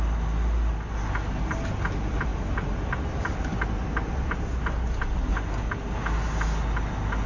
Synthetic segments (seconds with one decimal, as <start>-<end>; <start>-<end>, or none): none

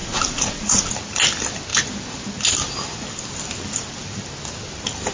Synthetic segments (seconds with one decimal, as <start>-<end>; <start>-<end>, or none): 0.0-0.9

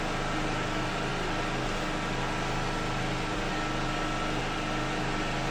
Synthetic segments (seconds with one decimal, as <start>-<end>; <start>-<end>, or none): none

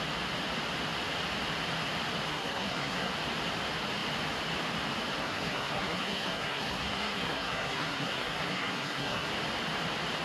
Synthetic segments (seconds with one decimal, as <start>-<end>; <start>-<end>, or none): 2.3-3.1; 5.2-9.3

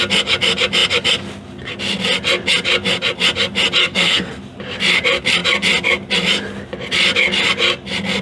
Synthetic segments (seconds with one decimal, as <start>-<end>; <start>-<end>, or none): 3.8-4.4

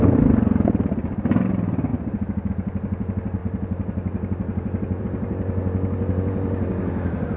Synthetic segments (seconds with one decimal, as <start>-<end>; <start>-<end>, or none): none